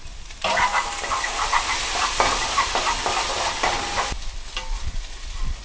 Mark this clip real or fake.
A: real